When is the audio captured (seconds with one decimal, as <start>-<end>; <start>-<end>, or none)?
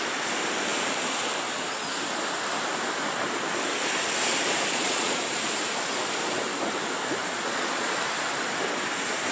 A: 0.0-4.7; 5.2-7.2; 7.9-9.3